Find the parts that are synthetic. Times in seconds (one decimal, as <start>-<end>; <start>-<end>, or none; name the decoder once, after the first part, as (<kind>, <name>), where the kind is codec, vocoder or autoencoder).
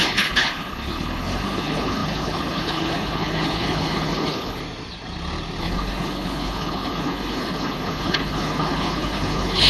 0.0-4.6 (codec, HILCodec); 5.6-9.7